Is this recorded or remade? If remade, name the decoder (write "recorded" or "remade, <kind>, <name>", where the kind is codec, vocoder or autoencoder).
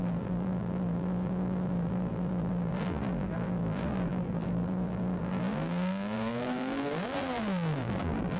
remade, vocoder, BigVGAN v2